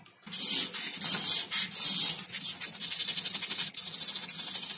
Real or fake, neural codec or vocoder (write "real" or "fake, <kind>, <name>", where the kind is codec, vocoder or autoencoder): real